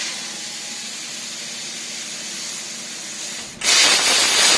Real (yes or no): yes